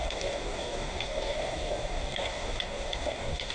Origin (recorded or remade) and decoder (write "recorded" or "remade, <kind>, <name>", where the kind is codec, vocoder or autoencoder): remade, codec, DAC